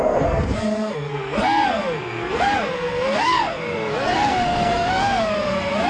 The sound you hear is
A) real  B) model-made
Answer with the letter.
B